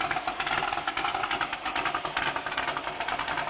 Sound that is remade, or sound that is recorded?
recorded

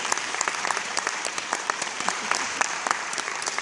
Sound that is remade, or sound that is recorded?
remade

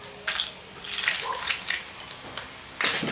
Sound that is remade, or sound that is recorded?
recorded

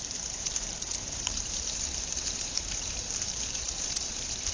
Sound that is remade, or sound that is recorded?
remade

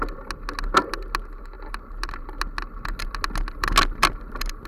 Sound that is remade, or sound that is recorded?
recorded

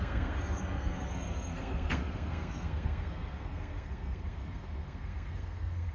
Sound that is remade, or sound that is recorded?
remade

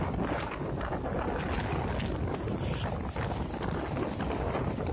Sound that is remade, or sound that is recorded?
recorded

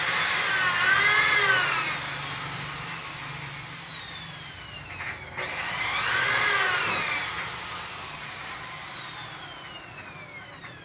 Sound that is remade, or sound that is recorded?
recorded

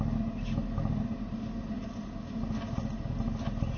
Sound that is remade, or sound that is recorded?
recorded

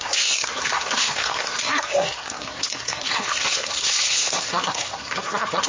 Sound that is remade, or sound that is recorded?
remade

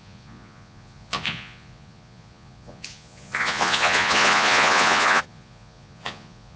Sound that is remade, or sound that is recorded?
remade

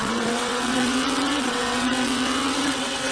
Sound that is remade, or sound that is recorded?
remade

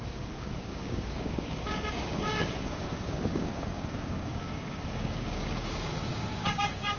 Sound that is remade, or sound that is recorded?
remade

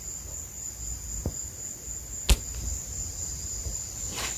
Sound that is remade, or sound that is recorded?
recorded